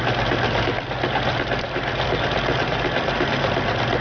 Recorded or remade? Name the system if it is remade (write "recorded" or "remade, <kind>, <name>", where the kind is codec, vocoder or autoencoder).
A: recorded